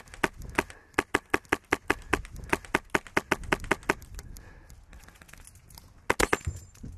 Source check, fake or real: real